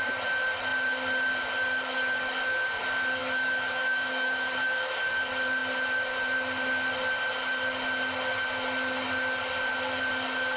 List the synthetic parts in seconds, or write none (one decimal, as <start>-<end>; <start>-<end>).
3.2-5.1